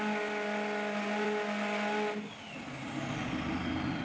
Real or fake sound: real